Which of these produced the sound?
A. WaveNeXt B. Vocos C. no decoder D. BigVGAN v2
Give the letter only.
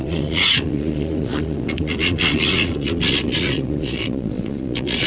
B